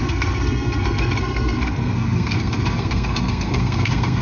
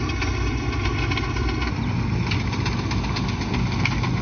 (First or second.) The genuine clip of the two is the second